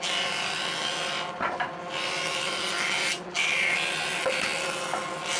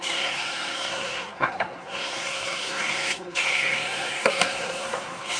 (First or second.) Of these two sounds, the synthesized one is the second